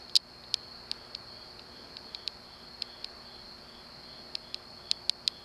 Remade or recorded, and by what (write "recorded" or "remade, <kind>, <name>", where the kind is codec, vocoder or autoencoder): recorded